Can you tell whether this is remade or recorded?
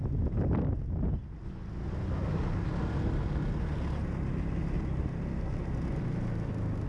recorded